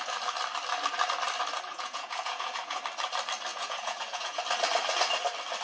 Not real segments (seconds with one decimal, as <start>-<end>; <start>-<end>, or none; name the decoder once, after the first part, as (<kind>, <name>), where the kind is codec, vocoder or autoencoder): 1.7-2.8 (vocoder, Vocos); 3.5-4.4